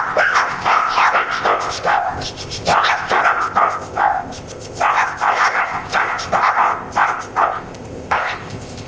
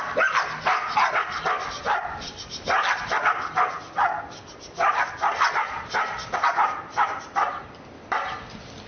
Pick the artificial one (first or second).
first